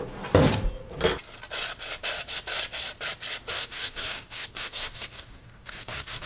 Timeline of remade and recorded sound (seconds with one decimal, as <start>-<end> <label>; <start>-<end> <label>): 0.0-3.5 recorded; 3.5-6.3 remade